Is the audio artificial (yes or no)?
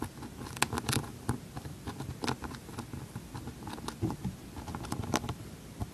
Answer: no